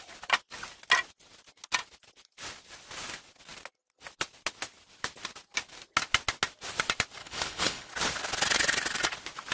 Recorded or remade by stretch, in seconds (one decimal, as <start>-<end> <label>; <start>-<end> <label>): 0.0-7.2 recorded; 7.2-7.9 remade; 7.9-9.5 recorded